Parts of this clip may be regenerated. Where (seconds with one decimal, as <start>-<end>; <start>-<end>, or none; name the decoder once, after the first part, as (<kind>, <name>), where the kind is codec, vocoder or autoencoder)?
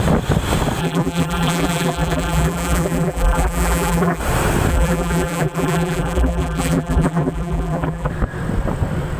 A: 0.8-4.2 (vocoder, BigVGAN v2); 4.7-8.1